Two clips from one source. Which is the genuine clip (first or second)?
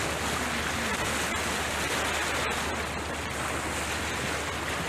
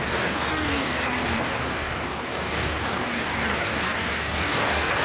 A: first